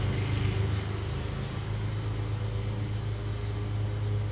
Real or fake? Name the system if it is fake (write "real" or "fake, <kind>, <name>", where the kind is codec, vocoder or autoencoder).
real